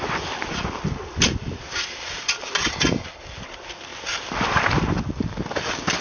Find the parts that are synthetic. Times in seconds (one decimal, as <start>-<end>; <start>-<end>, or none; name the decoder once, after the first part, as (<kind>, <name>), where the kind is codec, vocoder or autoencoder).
3.9-5.0 (vocoder, BigVGAN v2)

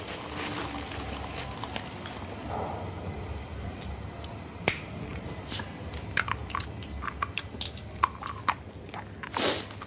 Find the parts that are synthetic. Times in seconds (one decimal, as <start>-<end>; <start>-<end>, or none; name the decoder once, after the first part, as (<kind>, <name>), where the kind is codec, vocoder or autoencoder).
3.7-4.6 (vocoder, BigVGAN v2)

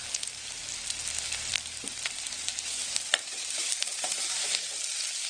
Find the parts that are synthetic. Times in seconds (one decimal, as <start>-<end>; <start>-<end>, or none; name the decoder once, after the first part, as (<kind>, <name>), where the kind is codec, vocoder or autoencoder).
0.0-0.6 (vocoder, BigVGAN v2); 1.5-4.7

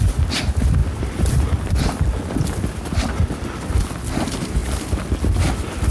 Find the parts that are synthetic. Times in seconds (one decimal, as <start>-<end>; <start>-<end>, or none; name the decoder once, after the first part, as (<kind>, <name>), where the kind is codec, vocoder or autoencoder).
0.8-3.8 (vocoder, BigVGAN v2); 4.6-5.5

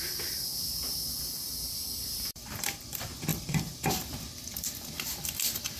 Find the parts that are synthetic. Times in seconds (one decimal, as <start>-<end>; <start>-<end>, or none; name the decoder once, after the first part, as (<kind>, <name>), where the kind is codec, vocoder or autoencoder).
0.0-5.8 (vocoder, BigVGAN v2)